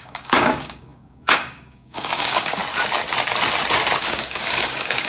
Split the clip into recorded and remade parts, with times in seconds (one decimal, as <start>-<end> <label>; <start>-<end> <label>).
0.0-2.6 remade; 2.6-4.0 recorded; 4.0-5.1 remade